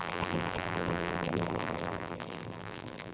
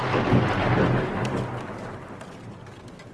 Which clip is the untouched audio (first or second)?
second